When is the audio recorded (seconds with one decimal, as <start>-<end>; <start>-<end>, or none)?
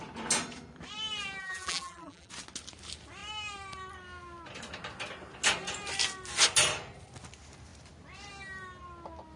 0.0-1.4; 2.3-9.4